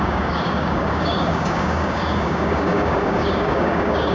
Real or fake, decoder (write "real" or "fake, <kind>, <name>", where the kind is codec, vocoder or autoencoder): fake, codec, DAC